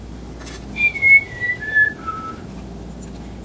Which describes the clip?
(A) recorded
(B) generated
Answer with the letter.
A